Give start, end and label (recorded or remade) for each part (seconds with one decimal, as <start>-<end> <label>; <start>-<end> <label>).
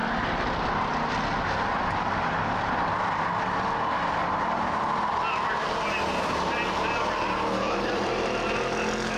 0.0-9.2 recorded